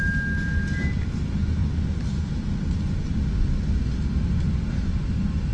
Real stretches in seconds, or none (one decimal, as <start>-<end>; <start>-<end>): 0.0-5.5